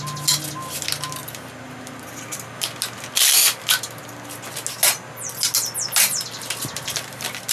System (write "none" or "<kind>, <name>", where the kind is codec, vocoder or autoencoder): none